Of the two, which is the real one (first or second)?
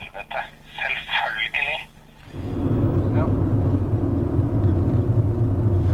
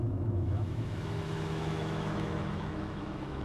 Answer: first